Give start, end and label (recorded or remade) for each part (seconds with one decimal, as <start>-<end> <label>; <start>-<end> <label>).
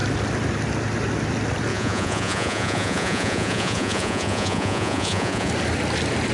0.0-1.7 recorded; 1.7-5.5 remade; 5.5-6.3 recorded